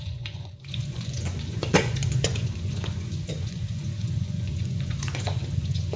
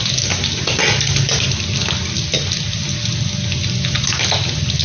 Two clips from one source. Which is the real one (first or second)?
second